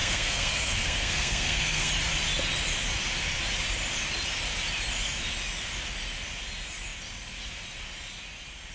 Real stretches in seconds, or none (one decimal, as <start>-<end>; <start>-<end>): 1.9-8.7

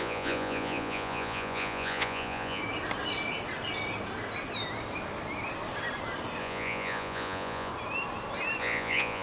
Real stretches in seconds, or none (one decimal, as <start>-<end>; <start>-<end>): 2.6-6.4; 7.7-8.6

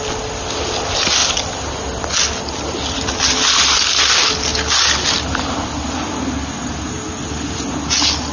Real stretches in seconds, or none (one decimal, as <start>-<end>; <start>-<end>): 0.0-8.3

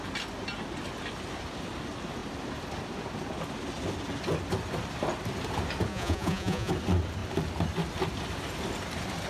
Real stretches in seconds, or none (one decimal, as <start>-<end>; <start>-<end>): 0.0-5.9; 6.7-9.3

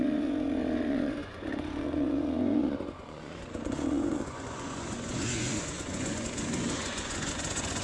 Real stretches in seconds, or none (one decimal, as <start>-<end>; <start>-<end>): none

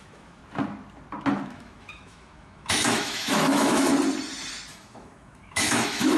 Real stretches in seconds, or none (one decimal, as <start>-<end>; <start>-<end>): 0.4-1.5; 3.9-4.7

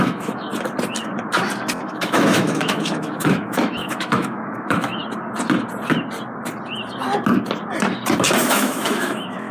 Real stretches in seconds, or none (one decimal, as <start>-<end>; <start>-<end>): 0.5-1.8; 5.0-8.4